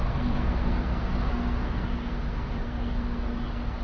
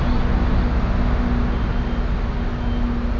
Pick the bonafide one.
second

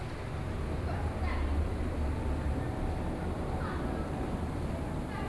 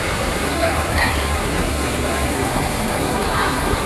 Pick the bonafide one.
first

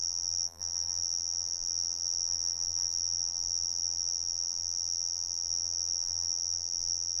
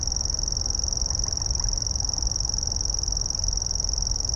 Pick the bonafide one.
second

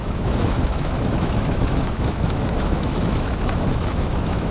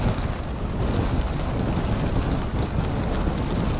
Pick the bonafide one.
second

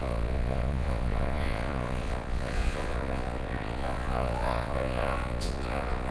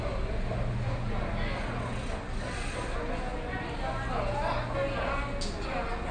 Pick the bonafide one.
second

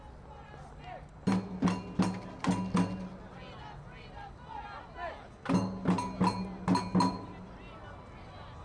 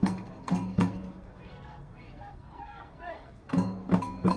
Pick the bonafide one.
first